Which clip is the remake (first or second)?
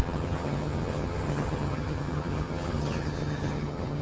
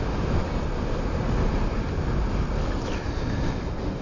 first